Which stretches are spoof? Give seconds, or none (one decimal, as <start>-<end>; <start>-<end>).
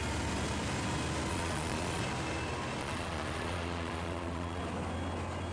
1.3-2.0; 2.8-4.6